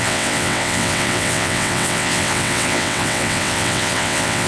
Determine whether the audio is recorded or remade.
remade